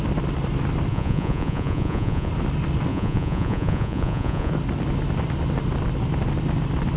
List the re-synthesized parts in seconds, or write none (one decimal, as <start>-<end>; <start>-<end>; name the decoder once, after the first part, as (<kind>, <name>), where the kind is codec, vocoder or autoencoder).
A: 0.9-2.3 (vocoder, Vocos); 2.9-4.5